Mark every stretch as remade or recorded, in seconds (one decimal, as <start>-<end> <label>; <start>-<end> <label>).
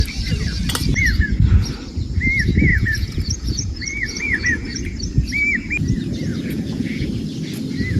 0.0-2.7 recorded; 2.7-5.0 remade; 5.0-6.3 recorded; 6.3-7.1 remade; 7.1-8.0 recorded